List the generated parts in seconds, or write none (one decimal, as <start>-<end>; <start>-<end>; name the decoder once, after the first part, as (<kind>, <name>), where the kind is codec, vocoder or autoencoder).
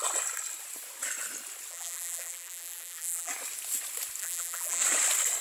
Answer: 1.7-3.3 (vocoder, BigVGAN v2); 4.2-4.8